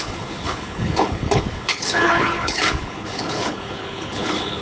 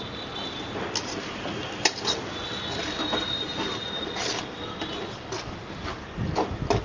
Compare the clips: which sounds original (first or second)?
second